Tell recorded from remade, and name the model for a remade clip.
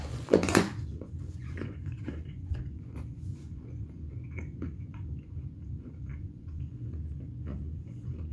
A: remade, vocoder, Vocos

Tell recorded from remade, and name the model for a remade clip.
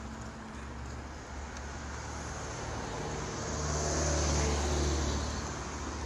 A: recorded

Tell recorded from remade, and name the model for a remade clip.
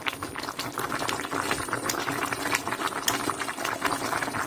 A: recorded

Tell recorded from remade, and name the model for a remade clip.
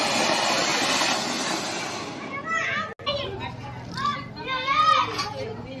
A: recorded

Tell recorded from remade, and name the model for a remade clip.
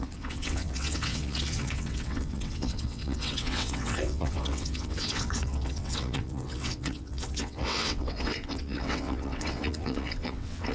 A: remade, vocoder, WaveNeXt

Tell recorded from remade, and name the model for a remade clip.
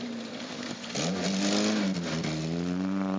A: recorded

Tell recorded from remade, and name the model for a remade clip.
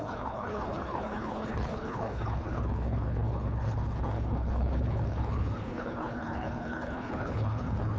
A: remade, codec, HILCodec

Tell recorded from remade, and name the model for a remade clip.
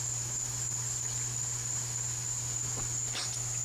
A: recorded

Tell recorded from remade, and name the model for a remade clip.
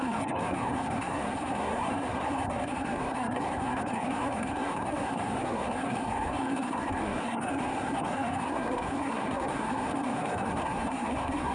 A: remade, codec, SNAC